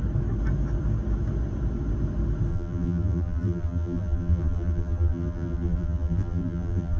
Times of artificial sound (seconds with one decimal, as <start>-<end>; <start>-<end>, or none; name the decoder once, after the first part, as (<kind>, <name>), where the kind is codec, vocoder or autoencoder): 2.5-7.0 (vocoder, BigVGAN v2)